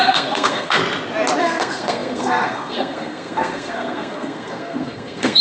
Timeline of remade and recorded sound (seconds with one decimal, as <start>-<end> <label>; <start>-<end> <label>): 0.0-0.8 remade; 0.8-1.4 recorded; 1.4-5.4 remade